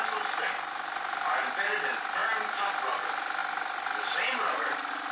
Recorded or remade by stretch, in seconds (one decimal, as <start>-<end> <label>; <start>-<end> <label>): 0.0-5.1 recorded